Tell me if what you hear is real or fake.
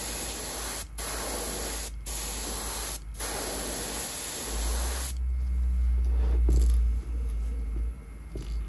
real